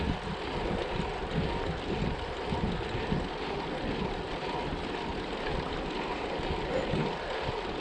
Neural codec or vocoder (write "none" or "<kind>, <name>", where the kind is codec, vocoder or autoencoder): none